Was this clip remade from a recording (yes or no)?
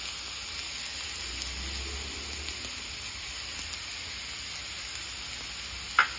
no